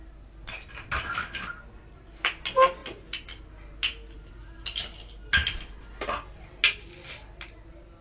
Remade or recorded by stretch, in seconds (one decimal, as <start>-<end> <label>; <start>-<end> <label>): 0.0-8.0 recorded